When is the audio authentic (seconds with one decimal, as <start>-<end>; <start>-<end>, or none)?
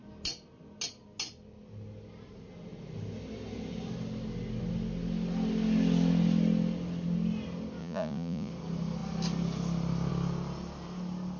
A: 0.0-7.8; 8.5-11.4